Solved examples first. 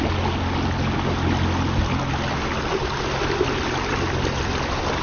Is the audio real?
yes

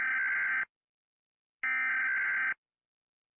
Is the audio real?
yes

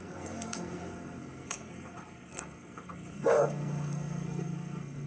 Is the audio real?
no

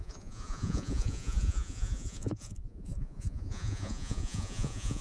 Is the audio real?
no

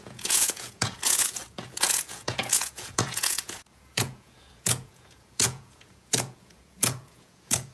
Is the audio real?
no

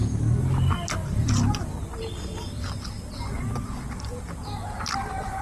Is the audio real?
yes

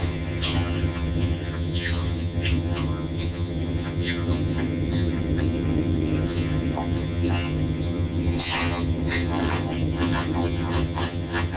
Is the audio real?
no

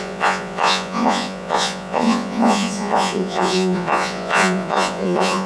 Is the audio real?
no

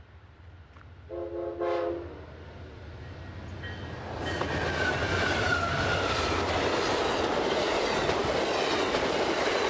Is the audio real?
yes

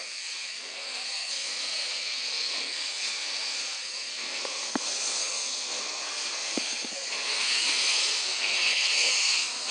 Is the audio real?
no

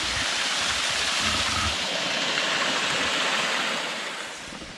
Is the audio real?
no